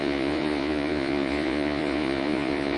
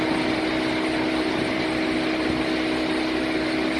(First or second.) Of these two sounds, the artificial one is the first